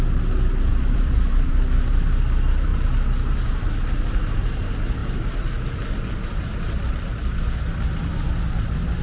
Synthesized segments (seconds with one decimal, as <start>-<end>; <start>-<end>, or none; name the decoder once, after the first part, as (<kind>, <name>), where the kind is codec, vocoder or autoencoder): 0.7-1.5 (vocoder, BigVGAN v2)